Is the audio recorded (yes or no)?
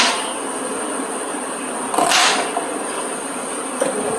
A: yes